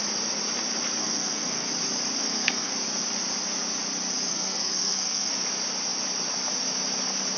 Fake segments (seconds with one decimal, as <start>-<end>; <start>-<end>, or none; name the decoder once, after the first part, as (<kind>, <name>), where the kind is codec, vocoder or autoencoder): 1.0-1.7 (codec, SNAC); 2.2-2.7; 4.3-5.3